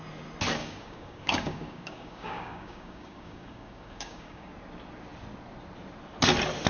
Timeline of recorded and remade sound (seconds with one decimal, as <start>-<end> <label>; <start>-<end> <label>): 0.0-0.6 recorded; 0.6-4.5 remade; 4.5-6.7 recorded